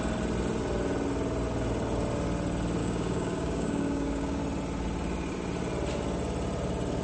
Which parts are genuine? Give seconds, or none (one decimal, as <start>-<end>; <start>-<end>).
0.0-2.8; 4.4-7.0